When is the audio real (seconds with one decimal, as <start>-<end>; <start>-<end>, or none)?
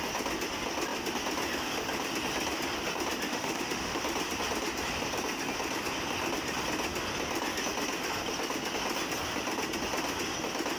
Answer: 0.0-3.3; 4.0-10.8